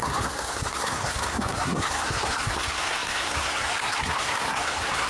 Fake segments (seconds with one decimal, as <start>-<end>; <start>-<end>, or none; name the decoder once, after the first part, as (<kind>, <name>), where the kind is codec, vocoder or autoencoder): 0.0-5.1 (codec, SNAC)